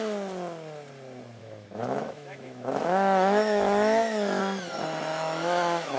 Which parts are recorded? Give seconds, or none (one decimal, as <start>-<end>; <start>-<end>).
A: 0.0-1.4; 4.4-5.1